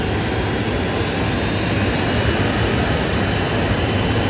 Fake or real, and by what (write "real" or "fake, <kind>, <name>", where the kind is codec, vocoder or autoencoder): real